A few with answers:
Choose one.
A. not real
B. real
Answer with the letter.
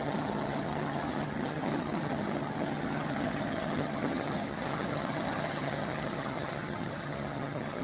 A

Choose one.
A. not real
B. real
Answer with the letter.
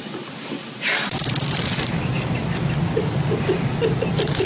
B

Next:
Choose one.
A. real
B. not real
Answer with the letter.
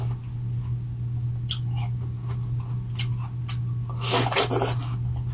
A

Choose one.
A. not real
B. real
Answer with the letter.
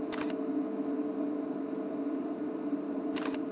B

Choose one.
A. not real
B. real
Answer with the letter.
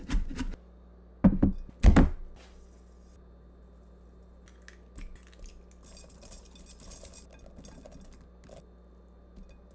B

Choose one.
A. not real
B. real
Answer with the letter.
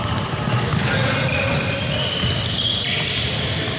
B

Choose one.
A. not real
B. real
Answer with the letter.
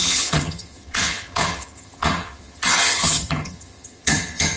A